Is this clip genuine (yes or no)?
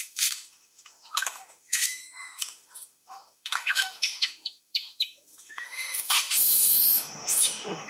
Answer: no